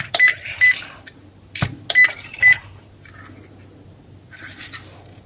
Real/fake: real